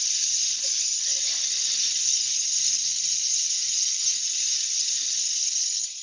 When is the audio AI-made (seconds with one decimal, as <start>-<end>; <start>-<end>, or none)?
none